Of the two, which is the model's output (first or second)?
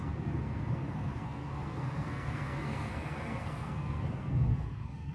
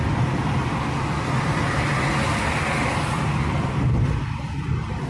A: first